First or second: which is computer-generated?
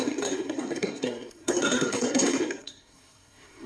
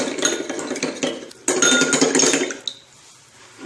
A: first